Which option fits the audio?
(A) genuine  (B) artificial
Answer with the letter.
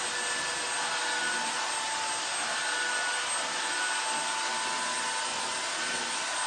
A